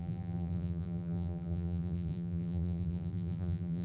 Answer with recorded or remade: remade